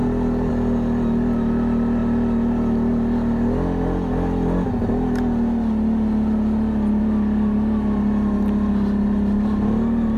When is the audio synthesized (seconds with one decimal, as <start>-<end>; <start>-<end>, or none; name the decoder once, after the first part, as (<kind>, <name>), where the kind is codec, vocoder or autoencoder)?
none